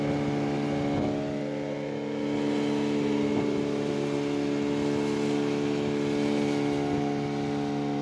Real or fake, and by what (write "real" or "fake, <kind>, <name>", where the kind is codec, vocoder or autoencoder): real